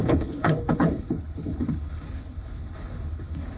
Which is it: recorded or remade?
remade